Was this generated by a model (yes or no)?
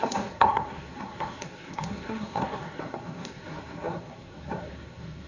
yes